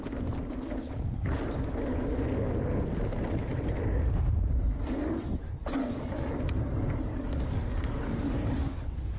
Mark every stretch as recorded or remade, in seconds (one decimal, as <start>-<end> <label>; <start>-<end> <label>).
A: 0.0-5.8 recorded; 5.8-6.3 remade; 6.3-6.7 recorded; 6.7-9.2 remade